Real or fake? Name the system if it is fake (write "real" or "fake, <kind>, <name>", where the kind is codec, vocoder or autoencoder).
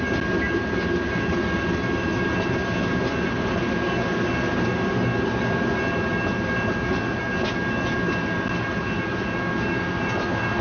real